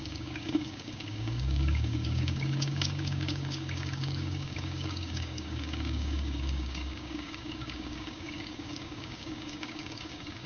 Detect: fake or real fake